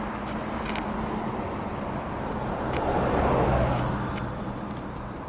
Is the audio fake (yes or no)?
no